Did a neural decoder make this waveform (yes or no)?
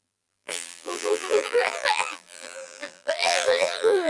yes